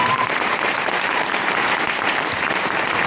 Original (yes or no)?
no